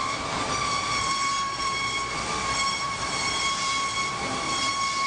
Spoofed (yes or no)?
yes